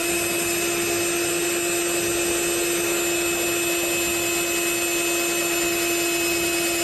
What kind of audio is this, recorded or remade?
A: recorded